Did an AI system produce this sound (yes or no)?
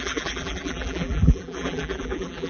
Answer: yes